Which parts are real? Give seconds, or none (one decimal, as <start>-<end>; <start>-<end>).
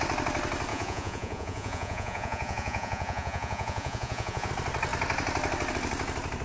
0.0-0.7; 4.5-6.4